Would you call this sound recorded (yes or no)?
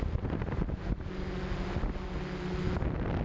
yes